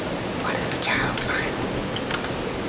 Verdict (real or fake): real